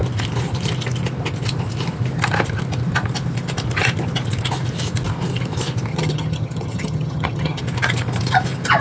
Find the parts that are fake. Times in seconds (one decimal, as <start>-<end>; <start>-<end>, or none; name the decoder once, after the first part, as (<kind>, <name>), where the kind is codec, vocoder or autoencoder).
5.9-7.6 (vocoder, HiFi-GAN)